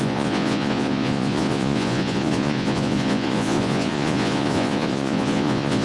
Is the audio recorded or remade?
remade